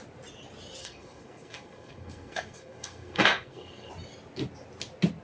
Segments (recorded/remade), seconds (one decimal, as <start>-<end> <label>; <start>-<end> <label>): 0.0-0.8 recorded; 0.8-3.9 remade; 3.9-5.2 recorded